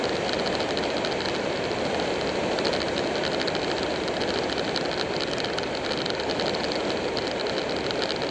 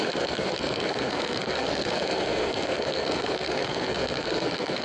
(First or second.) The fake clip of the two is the second